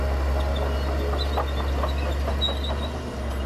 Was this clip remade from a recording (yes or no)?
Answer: no